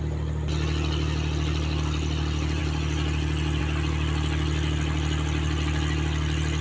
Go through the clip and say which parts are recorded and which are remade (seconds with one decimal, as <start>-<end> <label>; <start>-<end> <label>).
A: 0.0-6.6 recorded